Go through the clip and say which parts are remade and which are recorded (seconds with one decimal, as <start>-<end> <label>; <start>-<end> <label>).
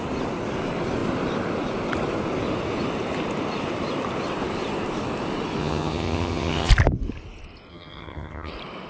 0.0-5.6 recorded; 5.6-6.7 remade; 6.7-7.7 recorded; 7.7-8.5 remade; 8.5-8.9 recorded